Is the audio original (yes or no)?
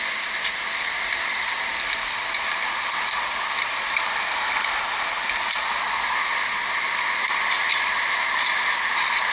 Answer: yes